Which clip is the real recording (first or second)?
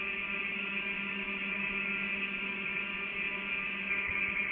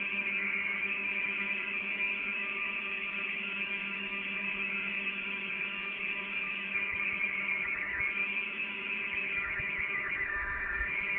first